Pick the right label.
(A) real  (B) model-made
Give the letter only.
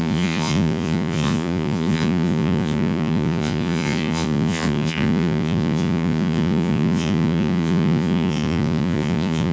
B